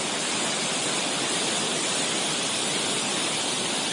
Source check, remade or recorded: remade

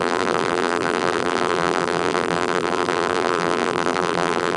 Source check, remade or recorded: remade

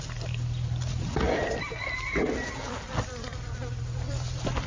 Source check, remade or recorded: remade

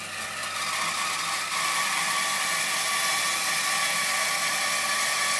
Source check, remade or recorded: recorded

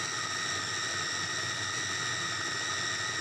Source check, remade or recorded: recorded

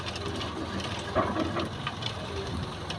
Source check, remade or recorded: recorded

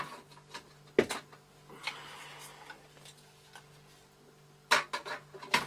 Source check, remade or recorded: recorded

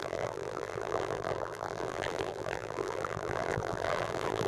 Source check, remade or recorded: remade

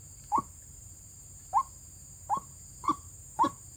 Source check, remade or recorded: remade